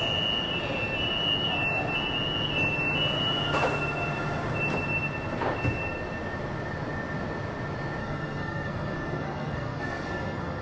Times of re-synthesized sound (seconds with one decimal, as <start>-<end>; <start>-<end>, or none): 8.0-10.6